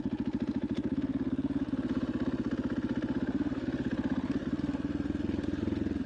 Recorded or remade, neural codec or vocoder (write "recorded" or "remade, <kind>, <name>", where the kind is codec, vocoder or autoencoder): recorded